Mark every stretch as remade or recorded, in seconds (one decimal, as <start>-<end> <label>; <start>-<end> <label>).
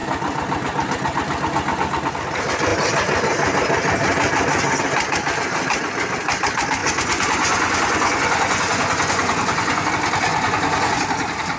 0.0-6.8 recorded; 6.8-9.9 remade; 9.9-10.3 recorded; 10.3-11.0 remade; 11.0-11.6 recorded